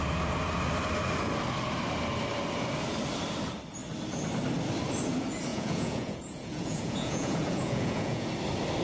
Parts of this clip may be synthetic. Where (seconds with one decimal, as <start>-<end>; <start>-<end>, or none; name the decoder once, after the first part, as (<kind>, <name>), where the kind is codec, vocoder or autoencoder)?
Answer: 5.5-8.3 (vocoder, Vocos)